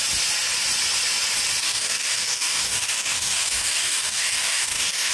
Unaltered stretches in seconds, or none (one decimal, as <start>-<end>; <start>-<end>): 0.0-1.6